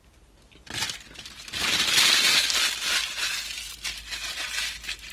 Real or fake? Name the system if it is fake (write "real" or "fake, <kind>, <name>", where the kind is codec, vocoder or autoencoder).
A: real